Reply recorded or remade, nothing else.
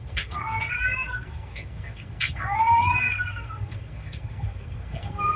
remade